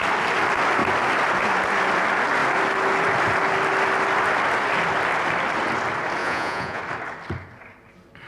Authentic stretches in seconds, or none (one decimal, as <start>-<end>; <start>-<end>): 0.0-6.2; 6.8-8.3